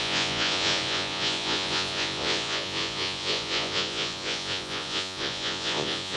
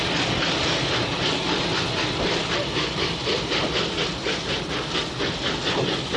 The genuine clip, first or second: second